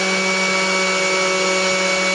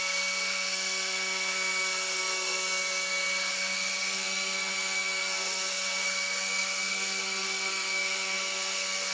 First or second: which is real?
first